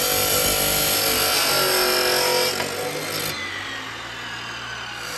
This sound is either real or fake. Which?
real